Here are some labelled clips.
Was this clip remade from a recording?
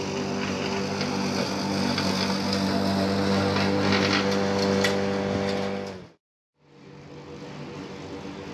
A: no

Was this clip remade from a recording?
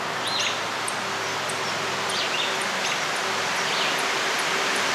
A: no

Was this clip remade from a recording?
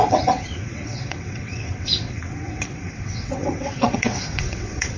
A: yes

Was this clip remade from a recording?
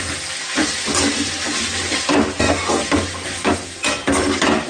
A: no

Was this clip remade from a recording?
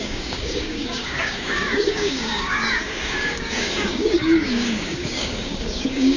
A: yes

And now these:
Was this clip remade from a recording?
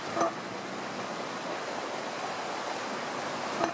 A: no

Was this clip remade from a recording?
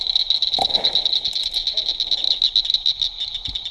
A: no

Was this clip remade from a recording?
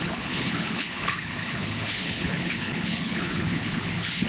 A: yes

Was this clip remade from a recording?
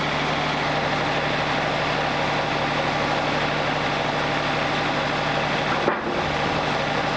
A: no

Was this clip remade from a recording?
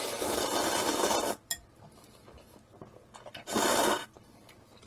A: yes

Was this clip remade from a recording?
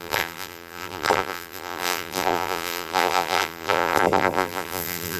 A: yes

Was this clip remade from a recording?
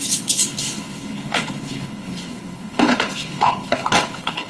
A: yes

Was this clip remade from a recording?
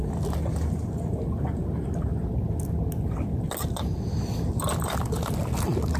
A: no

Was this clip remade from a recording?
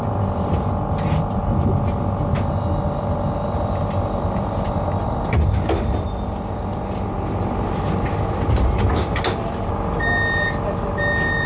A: no